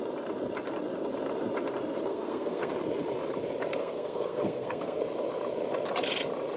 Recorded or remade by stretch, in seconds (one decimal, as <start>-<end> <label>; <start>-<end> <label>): 0.0-2.1 recorded; 2.1-2.7 remade; 2.7-3.8 recorded; 3.8-5.0 remade; 5.0-6.6 recorded